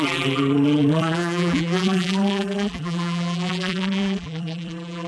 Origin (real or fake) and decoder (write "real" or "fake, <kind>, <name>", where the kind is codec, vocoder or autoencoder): fake, vocoder, BigVGAN v2